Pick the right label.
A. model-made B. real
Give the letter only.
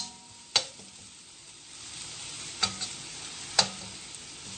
B